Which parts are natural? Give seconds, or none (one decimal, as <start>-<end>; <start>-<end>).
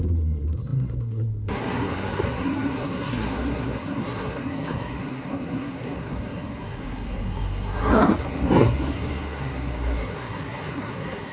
none